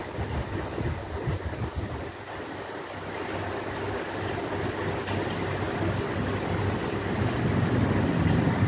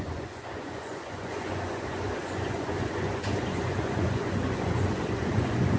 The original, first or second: first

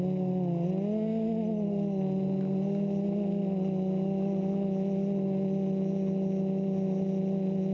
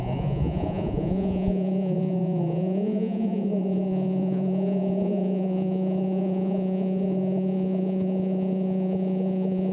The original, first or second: first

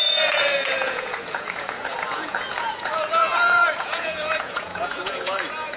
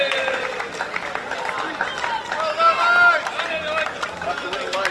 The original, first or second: second